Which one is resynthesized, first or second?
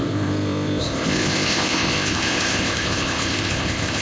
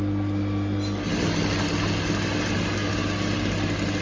first